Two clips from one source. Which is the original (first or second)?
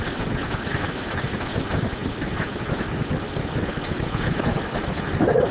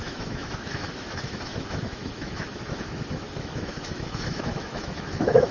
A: first